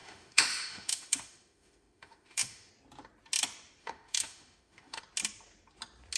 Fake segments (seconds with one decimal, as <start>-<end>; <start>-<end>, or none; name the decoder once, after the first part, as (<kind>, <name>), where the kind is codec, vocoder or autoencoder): 0.0-2.7 (autoencoder, DAC-VAE); 3.8-5.0